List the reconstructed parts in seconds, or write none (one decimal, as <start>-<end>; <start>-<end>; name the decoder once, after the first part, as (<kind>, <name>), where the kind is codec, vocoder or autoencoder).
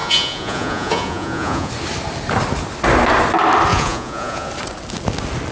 0.0-1.7 (vocoder, Vocos); 3.7-4.5